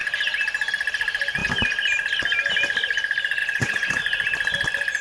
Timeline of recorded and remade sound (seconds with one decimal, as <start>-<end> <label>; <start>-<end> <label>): 0.0-3.4 recorded; 3.4-4.0 remade; 4.0-5.0 recorded